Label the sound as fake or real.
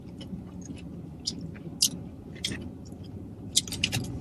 real